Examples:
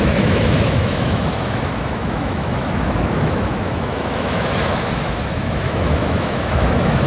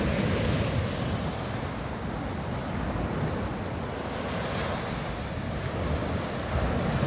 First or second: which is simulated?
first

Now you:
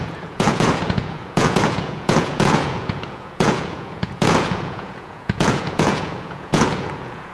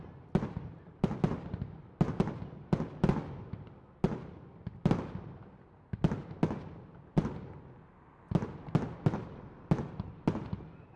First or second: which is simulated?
first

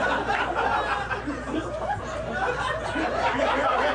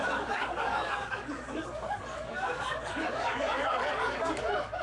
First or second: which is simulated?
second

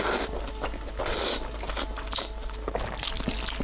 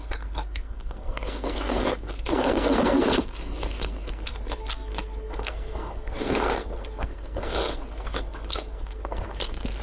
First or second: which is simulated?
second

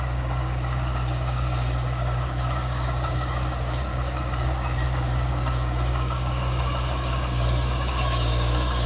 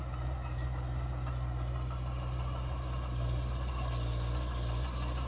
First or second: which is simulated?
first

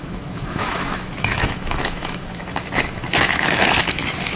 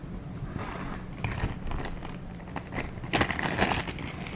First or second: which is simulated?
first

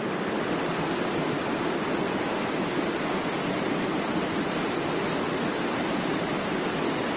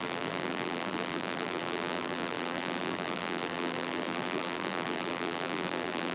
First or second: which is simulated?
second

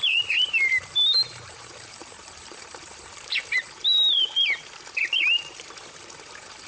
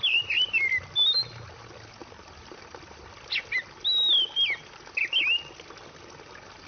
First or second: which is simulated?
first